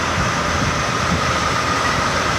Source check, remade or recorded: remade